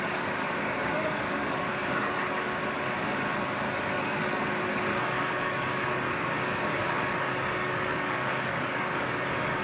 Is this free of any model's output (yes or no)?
no